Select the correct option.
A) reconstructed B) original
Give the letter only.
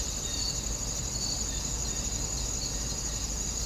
B